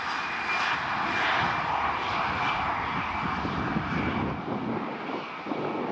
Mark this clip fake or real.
real